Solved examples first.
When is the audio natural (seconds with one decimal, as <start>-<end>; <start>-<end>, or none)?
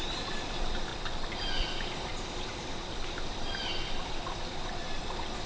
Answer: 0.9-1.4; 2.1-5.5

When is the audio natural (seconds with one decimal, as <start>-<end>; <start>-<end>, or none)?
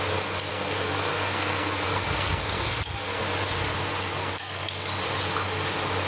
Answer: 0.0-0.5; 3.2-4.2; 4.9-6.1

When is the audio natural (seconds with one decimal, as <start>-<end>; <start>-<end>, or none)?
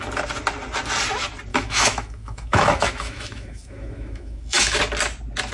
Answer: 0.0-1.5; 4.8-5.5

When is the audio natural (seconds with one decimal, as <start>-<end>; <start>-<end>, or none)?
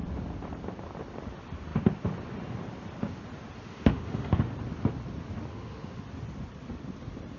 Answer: 0.0-3.7; 4.5-5.5; 6.0-7.4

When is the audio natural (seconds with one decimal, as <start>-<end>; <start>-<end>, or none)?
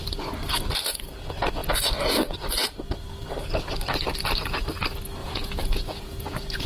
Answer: 0.0-5.2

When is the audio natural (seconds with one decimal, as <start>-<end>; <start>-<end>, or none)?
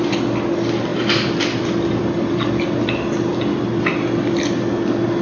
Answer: 0.0-0.9; 2.5-5.2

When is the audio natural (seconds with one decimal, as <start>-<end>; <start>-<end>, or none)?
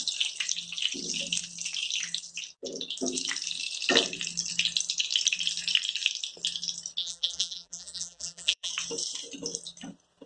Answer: 0.0-7.0; 8.7-10.3